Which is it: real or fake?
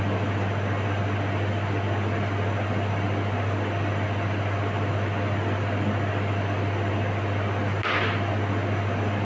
real